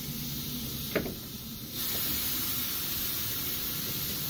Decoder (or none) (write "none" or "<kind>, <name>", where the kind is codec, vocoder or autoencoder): none